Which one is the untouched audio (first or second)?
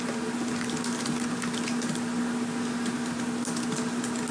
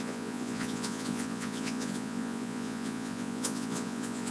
first